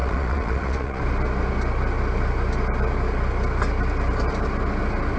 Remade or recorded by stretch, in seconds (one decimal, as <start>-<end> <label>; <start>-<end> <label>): 0.0-1.0 remade; 1.0-5.2 recorded